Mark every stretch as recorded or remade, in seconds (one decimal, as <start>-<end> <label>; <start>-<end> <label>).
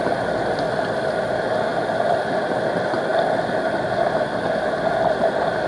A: 0.0-5.7 recorded